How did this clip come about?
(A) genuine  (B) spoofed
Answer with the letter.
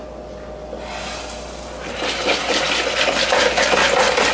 A